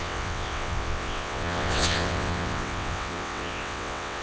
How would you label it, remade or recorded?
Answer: remade